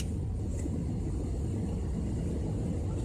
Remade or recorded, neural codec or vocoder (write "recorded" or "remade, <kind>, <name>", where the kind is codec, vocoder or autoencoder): recorded